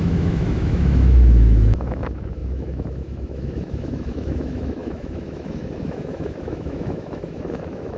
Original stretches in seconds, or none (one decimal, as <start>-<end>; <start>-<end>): none